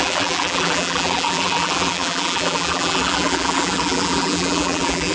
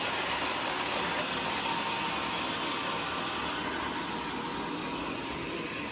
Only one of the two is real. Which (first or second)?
second